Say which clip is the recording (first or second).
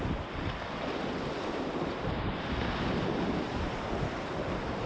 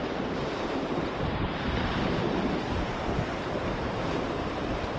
first